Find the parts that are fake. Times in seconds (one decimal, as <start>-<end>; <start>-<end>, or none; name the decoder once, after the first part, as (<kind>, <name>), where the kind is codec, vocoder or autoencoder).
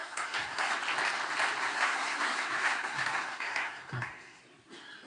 0.0-0.7 (codec, SNAC); 1.6-4.4